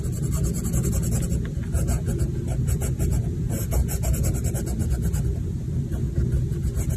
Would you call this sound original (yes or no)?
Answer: yes